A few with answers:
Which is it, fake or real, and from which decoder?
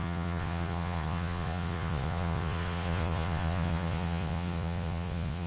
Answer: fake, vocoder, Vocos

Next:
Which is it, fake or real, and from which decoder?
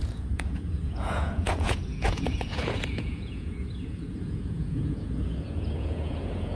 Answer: fake, vocoder, Vocos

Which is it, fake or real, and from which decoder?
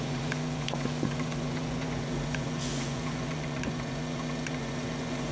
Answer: fake, vocoder, Vocos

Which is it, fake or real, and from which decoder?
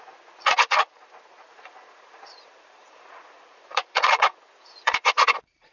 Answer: fake, vocoder, Vocos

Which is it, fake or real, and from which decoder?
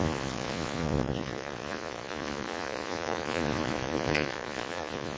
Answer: fake, vocoder, Vocos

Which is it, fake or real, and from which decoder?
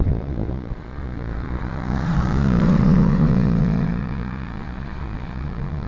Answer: fake, vocoder, Vocos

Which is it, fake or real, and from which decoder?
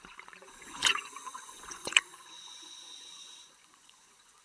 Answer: fake, vocoder, Vocos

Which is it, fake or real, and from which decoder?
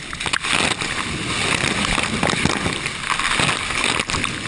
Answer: real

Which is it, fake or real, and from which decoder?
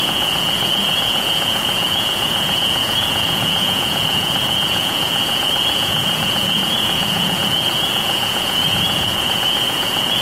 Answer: fake, vocoder, Vocos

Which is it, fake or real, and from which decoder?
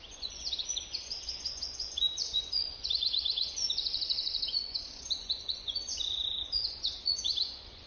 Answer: fake, vocoder, Vocos